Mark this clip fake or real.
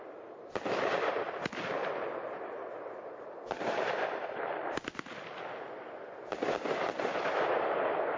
real